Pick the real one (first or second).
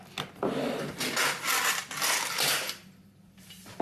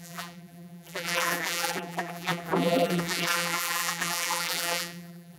first